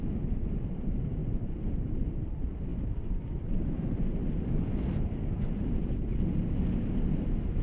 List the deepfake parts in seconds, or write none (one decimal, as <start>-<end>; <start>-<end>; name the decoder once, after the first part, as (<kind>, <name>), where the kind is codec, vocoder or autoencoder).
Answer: 2.7-5.9 (vocoder, BigVGAN v2)